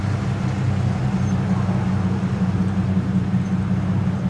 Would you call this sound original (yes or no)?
yes